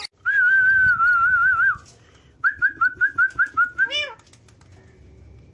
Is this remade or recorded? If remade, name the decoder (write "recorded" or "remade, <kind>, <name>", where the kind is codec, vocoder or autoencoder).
recorded